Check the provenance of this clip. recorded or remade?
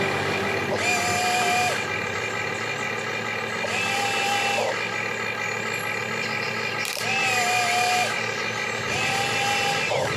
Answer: recorded